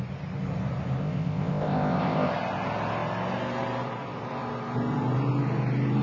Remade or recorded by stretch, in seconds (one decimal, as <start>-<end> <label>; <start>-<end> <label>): 0.0-1.0 recorded; 1.0-2.3 remade; 2.3-6.0 recorded